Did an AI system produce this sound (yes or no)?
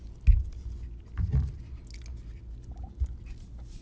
no